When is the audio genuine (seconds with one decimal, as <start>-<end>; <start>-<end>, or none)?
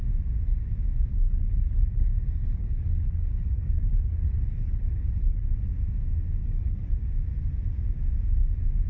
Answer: 0.0-1.1; 5.7-6.4; 6.9-8.9